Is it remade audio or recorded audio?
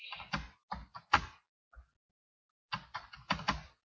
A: recorded